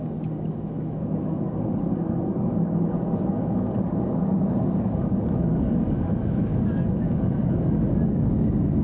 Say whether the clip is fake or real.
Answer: fake